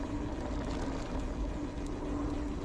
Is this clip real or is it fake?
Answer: real